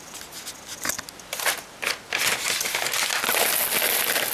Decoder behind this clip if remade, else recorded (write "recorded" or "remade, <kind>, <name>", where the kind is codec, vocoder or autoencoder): recorded